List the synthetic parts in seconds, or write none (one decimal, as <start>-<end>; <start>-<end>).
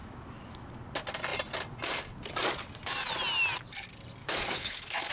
0.0-0.7; 4.2-5.1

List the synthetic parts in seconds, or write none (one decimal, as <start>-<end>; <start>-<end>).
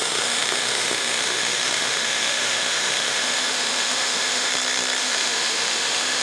0.0-4.5; 5.0-6.2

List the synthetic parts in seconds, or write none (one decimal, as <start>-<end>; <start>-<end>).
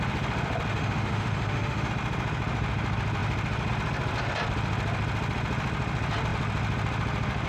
0.7-1.9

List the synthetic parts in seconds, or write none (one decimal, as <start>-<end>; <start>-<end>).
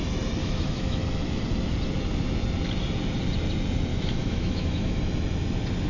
0.4-1.0; 3.9-5.0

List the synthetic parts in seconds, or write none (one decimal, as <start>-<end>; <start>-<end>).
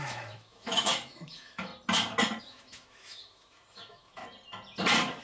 0.0-1.7; 2.4-4.2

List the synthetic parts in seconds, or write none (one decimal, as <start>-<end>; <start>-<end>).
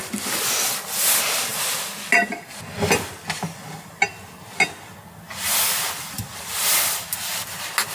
none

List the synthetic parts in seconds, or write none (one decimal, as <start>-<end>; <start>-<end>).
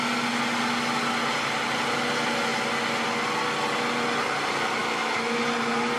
4.8-5.4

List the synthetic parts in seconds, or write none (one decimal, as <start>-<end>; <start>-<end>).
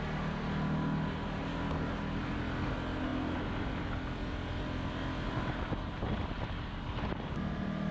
none